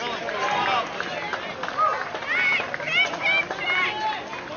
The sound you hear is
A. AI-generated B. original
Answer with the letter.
B